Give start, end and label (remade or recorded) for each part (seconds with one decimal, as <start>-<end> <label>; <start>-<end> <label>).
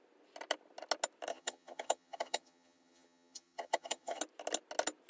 0.0-1.3 recorded; 1.3-4.2 remade; 4.2-5.1 recorded